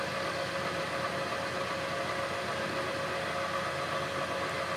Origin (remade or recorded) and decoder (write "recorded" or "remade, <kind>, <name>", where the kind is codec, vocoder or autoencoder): recorded